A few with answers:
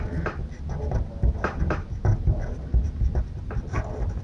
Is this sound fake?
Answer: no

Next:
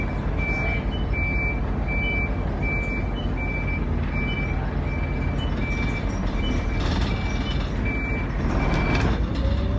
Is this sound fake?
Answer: no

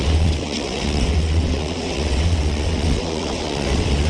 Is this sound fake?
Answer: yes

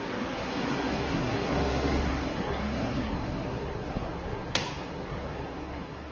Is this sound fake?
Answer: yes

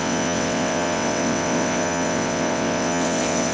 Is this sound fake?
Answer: yes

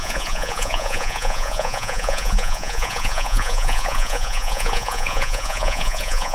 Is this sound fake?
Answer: yes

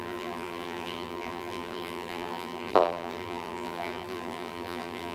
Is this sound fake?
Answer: yes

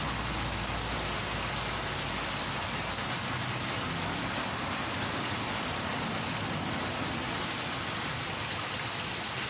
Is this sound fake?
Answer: no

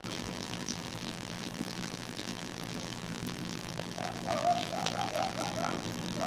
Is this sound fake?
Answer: yes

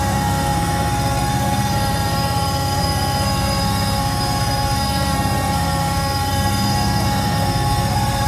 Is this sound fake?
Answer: yes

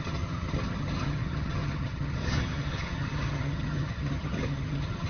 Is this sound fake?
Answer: yes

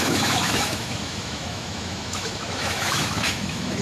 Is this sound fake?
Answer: yes